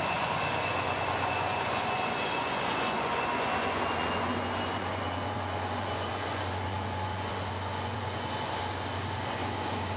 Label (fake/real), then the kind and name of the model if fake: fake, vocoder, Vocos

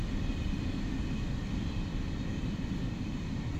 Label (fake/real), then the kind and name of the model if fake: fake, vocoder, BigVGAN v2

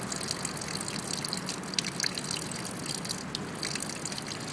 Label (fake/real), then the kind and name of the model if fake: real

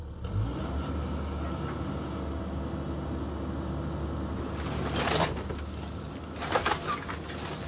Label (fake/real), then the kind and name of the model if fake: real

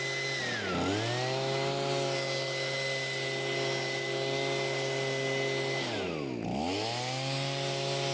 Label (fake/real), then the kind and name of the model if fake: real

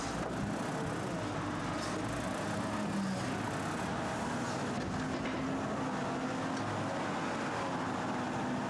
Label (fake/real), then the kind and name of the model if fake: real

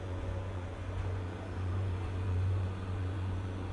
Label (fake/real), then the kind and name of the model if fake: fake, vocoder, Vocos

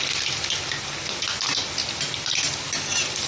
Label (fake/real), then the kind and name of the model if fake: real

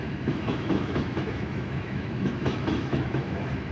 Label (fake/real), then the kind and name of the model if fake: fake, autoencoder, DAC-VAE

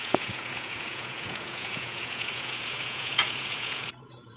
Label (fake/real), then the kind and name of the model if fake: fake, vocoder, Vocos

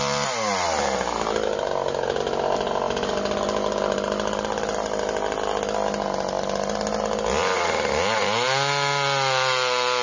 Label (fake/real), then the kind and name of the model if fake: real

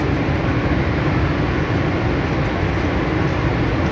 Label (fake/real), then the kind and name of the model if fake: real